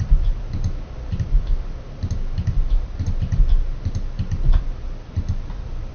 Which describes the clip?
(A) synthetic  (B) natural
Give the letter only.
B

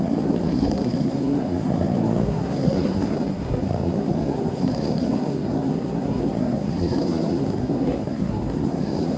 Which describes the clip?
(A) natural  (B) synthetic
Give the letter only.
B